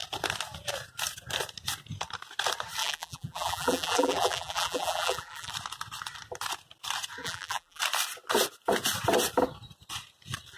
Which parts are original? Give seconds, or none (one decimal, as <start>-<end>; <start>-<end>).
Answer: 0.0-2.8; 5.5-7.2; 7.8-10.6